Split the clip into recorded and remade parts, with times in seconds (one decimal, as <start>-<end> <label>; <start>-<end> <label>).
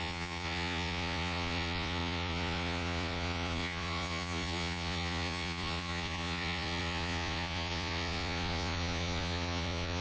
0.0-10.0 remade